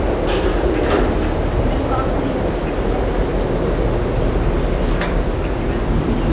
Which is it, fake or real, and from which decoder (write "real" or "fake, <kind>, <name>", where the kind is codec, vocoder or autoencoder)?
real